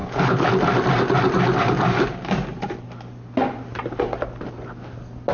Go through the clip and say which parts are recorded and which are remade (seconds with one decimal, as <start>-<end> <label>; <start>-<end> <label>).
0.0-0.5 remade; 0.5-5.3 recorded